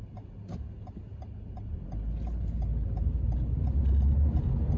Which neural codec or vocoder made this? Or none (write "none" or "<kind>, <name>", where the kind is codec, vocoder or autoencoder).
none